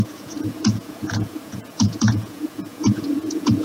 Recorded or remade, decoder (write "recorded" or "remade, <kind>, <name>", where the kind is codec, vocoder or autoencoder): remade, vocoder, Vocos